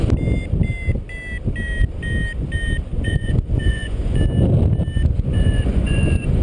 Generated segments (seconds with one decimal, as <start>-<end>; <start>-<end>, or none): 2.9-4.2; 5.3-6.4